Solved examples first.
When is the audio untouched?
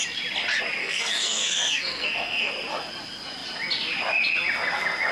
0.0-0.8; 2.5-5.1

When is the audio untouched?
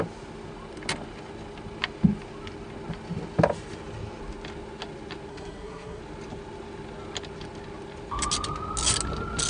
0.0-5.3; 6.0-9.5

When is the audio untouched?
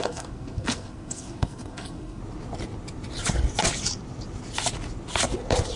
2.2-5.8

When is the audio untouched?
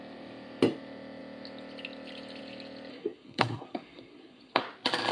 0.0-2.9; 4.6-5.1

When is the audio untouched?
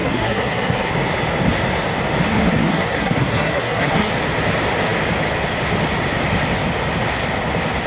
0.9-2.3; 4.1-7.9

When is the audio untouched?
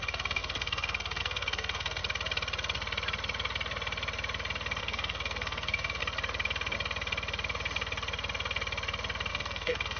2.0-4.8; 6.0-9.3